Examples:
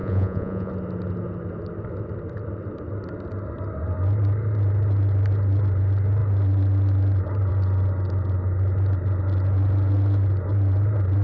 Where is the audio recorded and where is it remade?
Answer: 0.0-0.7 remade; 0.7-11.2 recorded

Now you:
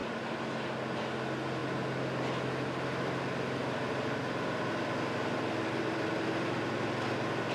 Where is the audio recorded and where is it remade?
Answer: 0.0-7.5 recorded

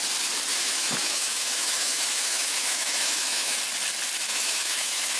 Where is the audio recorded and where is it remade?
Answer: 0.0-0.5 recorded; 0.5-3.6 remade; 3.6-4.3 recorded; 4.3-5.2 remade